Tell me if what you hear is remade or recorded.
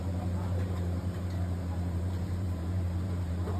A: remade